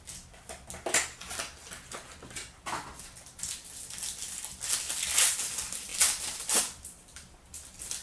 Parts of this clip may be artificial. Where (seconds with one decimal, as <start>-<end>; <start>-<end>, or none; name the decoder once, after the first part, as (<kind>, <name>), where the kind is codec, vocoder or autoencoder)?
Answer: none